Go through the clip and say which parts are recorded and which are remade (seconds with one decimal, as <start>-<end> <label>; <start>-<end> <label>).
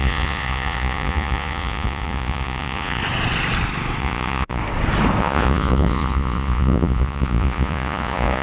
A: 0.0-3.0 remade; 3.0-4.0 recorded; 4.0-4.6 remade; 4.6-5.2 recorded; 5.2-8.4 remade